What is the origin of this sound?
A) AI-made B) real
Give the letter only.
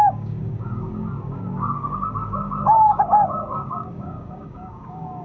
A